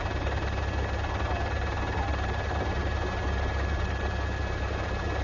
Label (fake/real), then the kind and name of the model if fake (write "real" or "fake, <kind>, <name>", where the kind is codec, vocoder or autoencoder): real